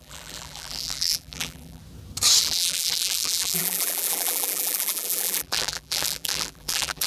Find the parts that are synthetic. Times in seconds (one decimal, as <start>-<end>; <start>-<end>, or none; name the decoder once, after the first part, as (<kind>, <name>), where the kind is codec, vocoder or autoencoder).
0.0-1.8 (vocoder, BigVGAN v2); 2.4-7.1